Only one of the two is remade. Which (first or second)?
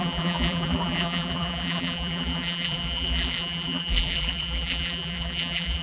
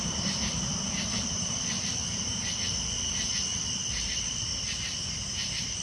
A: first